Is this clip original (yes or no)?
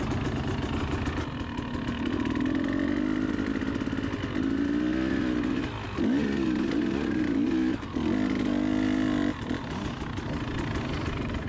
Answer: yes